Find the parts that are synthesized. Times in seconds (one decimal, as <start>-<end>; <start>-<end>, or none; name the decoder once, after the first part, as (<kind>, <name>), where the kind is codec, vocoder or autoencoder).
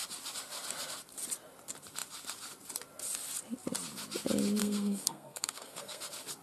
4.6-6.0 (codec, SNAC)